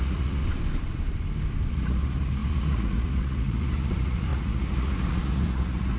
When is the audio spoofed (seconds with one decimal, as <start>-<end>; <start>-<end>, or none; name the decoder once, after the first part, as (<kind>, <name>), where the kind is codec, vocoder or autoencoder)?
0.0-0.4 (vocoder, Vocos); 1.7-6.0